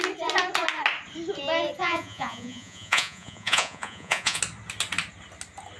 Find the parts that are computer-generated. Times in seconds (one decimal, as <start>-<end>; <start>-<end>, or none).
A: 1.8-4.4